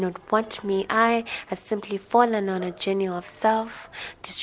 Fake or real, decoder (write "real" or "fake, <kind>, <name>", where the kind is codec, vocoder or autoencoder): real